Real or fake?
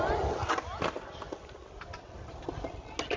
real